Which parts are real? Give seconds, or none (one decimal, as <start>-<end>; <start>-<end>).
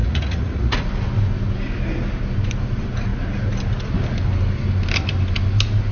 0.9-5.9